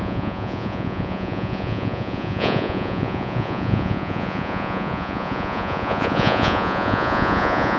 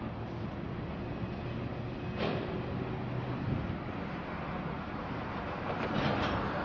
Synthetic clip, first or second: first